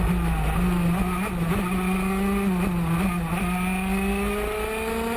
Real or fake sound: real